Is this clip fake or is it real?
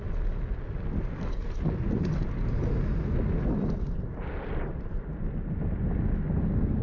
real